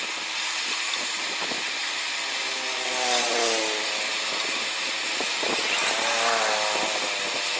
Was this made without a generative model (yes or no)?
yes